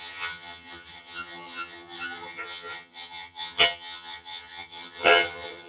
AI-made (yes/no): yes